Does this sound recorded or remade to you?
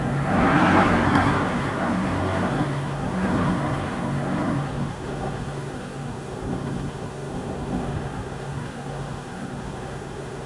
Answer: remade